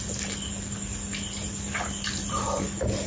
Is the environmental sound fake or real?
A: real